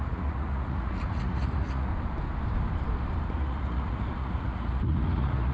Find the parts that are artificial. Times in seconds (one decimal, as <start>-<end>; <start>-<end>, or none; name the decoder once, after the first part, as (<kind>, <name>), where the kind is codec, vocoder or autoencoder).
0.0-1.9 (vocoder, Vocos); 3.3-5.5